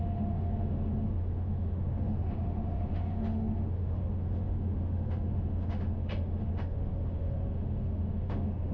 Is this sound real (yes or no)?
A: no